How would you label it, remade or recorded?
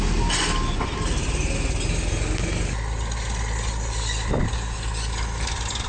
recorded